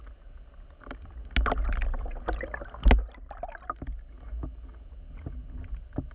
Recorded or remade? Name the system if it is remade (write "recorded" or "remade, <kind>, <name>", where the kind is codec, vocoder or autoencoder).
recorded